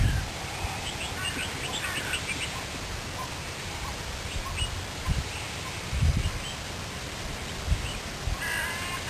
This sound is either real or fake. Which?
real